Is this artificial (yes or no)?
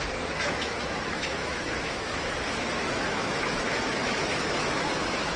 yes